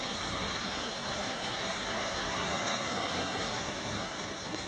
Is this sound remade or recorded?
remade